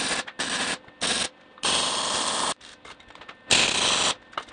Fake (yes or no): no